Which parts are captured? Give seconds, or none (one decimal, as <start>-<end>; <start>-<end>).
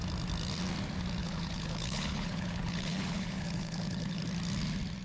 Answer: 0.0-1.2; 4.2-5.0